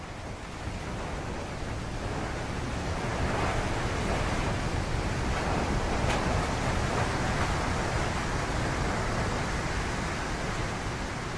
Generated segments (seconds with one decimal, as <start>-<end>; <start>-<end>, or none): none

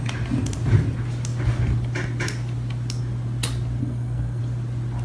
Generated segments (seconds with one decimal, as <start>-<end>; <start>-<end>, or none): 3.8-4.4